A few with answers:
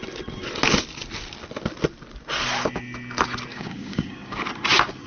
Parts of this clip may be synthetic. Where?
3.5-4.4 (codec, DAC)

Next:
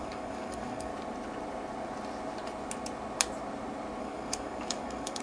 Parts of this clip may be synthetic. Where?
0.0-0.9 (codec, DAC); 4.0-5.2

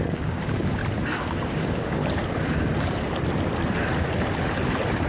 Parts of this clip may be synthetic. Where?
0.0-0.8 (codec, DAC); 1.5-2.0

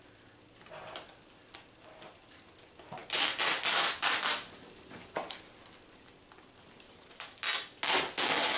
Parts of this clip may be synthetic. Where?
none

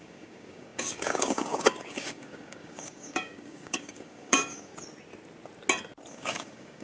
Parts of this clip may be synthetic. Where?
0.0-4.7 (codec, DAC); 6.1-6.8

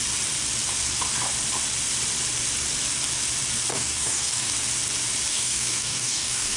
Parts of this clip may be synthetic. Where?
3.7-4.5 (codec, DAC); 5.3-6.6